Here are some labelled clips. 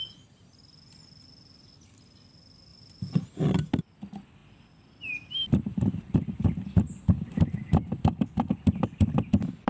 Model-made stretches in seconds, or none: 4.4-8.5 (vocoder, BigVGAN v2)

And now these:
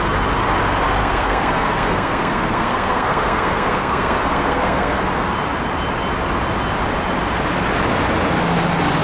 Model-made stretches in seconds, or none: 1.0-5.0 (codec, SNAC)

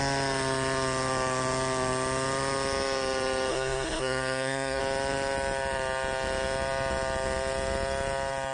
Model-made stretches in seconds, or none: 3.5-4.8 (codec, SNAC)

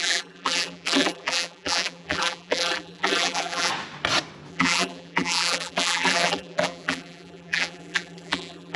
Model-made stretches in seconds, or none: 0.0-3.7 (vocoder, BigVGAN v2); 4.5-8.8

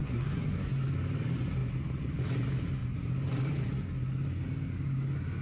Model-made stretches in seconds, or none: 0.0-0.7 (codec, SNAC)